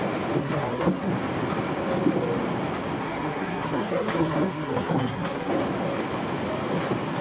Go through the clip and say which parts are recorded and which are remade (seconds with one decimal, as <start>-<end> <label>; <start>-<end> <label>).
0.0-0.4 recorded; 0.4-1.1 remade; 1.1-3.0 recorded; 3.0-5.5 remade; 5.5-7.2 recorded